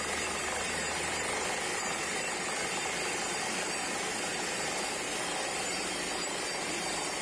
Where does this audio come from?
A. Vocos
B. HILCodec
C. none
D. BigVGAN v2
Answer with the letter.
C